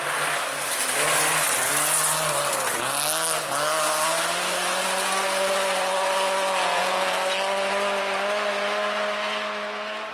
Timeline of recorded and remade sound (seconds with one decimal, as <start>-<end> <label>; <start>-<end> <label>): 0.0-6.6 recorded; 6.6-7.1 remade; 7.1-10.1 recorded